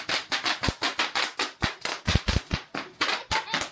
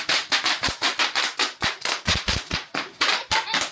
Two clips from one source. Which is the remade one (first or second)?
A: second